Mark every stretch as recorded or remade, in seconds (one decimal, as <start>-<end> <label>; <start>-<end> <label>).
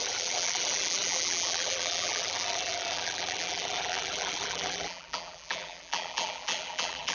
0.0-7.1 remade